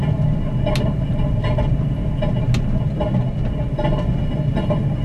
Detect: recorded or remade recorded